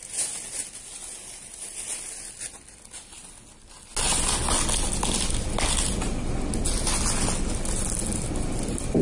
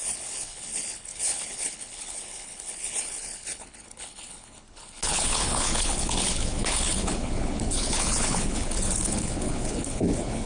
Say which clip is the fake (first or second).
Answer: second